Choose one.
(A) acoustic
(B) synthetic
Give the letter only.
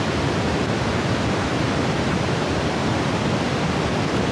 A